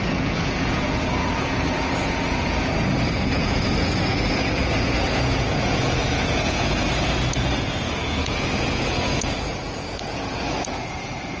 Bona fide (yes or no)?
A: no